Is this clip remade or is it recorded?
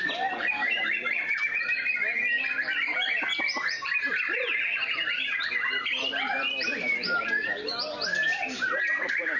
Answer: remade